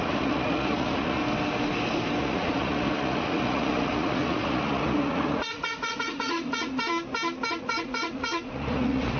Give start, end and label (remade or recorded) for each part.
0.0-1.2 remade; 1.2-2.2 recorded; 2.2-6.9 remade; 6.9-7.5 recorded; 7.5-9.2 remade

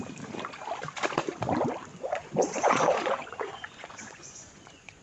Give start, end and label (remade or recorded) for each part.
0.0-1.9 recorded; 1.9-5.0 remade

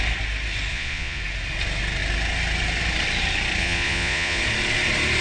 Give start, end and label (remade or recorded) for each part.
0.0-0.7 recorded; 0.7-1.2 remade; 1.2-3.6 recorded; 3.6-4.4 remade; 4.4-5.2 recorded